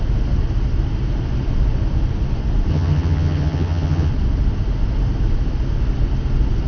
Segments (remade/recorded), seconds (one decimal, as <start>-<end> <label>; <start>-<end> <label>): 0.0-2.7 recorded; 2.7-4.1 remade; 4.1-6.7 recorded